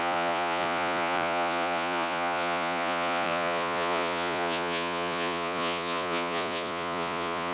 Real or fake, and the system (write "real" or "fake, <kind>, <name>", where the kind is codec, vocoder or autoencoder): fake, vocoder, Vocos